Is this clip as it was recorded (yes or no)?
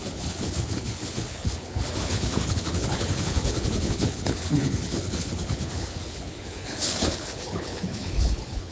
no